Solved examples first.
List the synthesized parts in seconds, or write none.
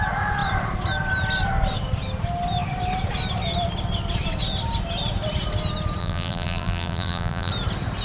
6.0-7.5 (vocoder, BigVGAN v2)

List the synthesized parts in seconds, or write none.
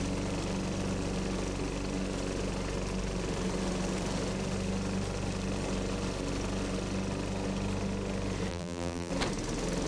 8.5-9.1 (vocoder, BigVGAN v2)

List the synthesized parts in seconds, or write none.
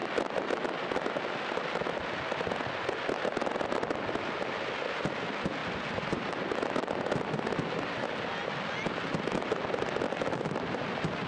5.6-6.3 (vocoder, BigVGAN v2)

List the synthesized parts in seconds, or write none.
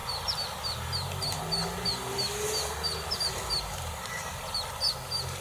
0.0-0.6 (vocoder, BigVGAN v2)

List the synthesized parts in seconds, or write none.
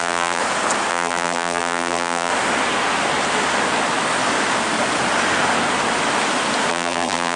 0.0-0.4 (vocoder, BigVGAN v2); 0.9-2.3; 6.7-7.4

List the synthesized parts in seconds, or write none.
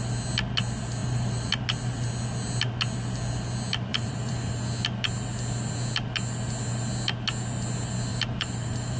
1.0-1.6 (vocoder, BigVGAN v2); 3.9-4.5; 8.1-9.0